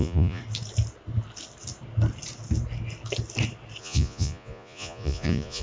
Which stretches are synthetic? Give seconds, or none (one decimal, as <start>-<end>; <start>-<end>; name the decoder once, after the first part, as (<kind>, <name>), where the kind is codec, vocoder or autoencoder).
0.0-0.4 (vocoder, Vocos); 3.8-5.6